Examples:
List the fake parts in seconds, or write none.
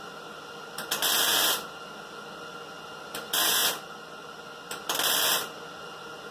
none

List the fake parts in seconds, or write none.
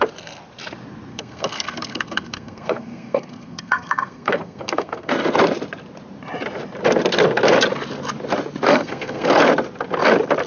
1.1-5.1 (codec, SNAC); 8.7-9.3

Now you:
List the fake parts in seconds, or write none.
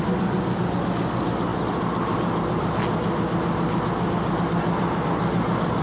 none